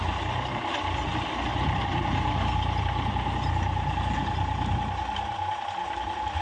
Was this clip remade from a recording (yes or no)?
yes